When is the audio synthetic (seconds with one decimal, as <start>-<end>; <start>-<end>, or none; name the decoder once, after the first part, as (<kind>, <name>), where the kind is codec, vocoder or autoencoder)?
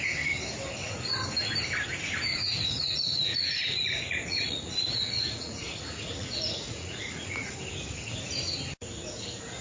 0.8-1.3 (vocoder, Vocos); 2.3-7.5